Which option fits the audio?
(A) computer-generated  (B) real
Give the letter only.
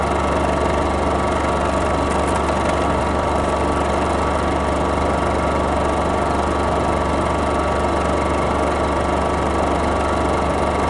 B